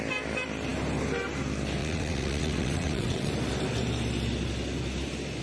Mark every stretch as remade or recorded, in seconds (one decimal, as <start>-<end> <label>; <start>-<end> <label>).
0.0-1.8 recorded; 1.8-3.3 remade; 3.3-5.4 recorded